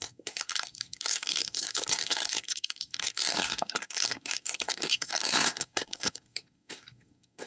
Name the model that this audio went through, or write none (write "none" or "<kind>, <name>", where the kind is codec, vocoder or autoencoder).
codec, SNAC